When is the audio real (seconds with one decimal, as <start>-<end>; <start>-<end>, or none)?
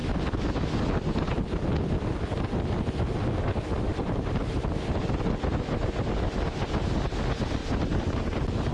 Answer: 0.0-3.9; 4.9-7.6